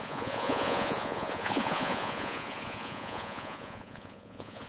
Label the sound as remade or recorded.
remade